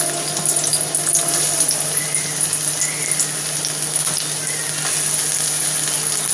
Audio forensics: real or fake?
real